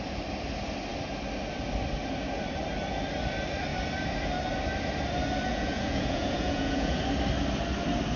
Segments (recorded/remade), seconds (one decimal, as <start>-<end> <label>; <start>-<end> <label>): 0.0-5.5 recorded; 5.5-7.0 remade; 7.0-8.2 recorded